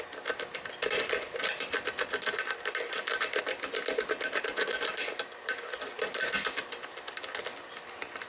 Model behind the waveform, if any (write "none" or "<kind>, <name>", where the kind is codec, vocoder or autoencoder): none